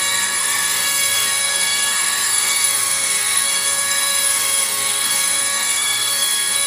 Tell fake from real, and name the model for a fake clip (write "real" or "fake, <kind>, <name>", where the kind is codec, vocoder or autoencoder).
fake, codec, SNAC